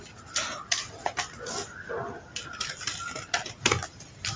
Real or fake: real